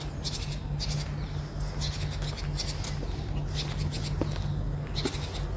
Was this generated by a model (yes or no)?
no